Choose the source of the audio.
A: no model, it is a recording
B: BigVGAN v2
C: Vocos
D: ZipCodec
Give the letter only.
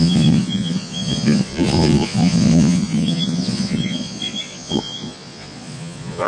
C